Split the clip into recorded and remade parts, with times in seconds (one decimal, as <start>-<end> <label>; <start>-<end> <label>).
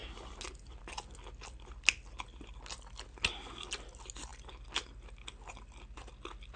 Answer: 0.0-6.6 recorded